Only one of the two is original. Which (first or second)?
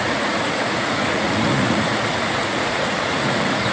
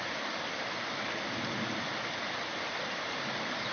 second